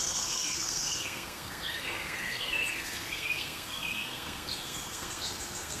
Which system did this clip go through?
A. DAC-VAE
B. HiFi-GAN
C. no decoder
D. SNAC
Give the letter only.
D